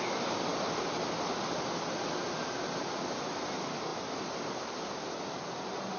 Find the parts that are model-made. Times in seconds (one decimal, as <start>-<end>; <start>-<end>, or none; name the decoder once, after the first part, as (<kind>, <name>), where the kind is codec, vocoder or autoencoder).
none